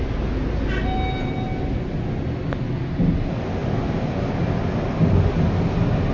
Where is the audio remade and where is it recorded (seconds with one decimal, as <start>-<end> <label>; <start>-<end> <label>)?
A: 0.0-6.1 recorded